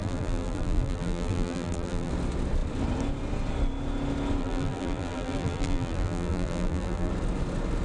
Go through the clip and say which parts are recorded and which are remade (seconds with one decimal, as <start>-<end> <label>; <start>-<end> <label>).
0.0-2.1 remade; 2.1-4.4 recorded; 4.4-7.1 remade; 7.1-7.8 recorded